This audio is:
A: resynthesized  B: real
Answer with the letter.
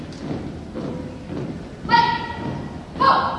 B